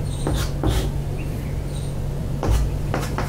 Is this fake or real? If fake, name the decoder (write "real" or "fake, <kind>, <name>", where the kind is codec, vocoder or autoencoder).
fake, vocoder, BigVGAN v2